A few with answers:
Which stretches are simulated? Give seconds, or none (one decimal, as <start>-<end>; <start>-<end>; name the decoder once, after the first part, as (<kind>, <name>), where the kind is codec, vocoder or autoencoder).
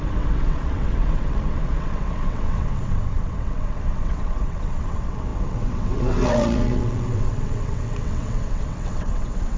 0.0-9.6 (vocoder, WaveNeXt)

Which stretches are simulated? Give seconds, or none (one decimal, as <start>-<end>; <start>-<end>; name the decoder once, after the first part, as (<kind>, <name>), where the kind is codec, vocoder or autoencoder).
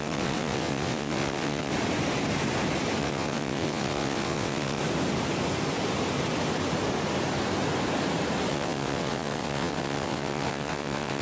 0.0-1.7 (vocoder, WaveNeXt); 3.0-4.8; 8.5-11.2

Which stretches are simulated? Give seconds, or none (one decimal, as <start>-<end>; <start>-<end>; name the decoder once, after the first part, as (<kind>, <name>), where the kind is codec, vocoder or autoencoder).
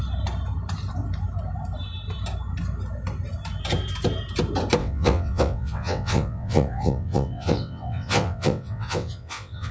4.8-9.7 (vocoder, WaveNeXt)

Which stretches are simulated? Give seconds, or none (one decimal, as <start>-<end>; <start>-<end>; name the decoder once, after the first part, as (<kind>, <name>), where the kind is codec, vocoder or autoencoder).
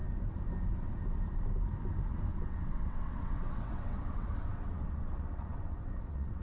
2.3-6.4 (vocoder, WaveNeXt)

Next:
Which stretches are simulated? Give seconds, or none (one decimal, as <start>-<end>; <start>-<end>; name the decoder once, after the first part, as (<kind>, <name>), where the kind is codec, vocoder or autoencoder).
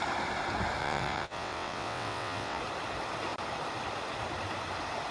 0.8-2.6 (vocoder, WaveNeXt)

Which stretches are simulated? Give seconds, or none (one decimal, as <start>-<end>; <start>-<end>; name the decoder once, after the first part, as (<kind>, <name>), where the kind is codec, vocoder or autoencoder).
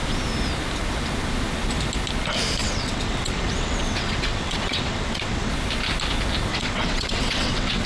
2.6-5.5 (vocoder, WaveNeXt); 6.5-7.9